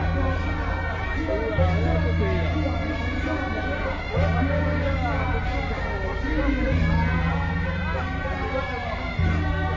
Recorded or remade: recorded